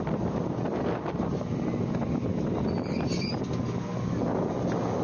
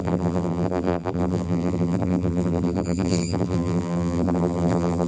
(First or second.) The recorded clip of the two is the first